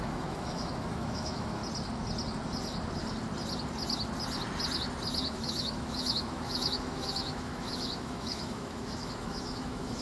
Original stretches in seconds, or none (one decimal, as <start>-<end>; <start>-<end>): 1.6-5.3